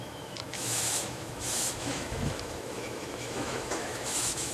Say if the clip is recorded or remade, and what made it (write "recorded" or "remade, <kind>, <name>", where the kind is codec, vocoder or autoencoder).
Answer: remade, autoencoder, DAC-VAE